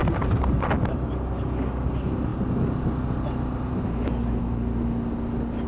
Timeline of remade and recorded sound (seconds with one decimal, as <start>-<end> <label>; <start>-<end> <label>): 0.0-0.7 remade; 0.7-5.7 recorded